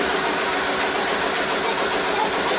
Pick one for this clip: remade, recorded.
recorded